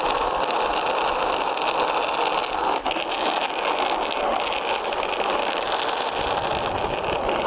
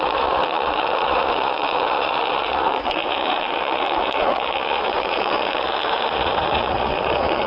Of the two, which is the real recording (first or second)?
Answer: first